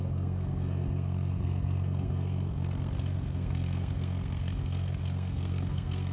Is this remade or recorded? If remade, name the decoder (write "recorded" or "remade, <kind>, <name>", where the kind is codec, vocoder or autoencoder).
remade, codec, SNAC